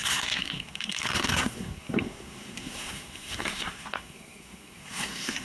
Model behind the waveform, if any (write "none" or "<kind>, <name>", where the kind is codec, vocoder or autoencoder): codec, SNAC